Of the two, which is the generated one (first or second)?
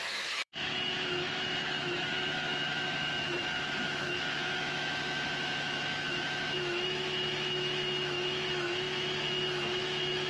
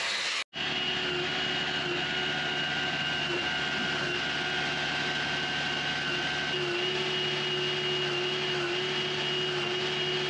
first